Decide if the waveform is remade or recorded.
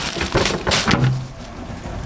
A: recorded